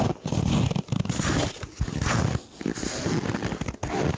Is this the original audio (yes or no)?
yes